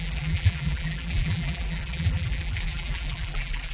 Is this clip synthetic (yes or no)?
yes